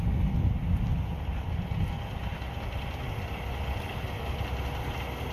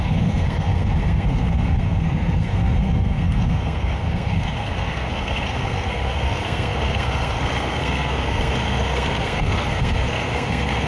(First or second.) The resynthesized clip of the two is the second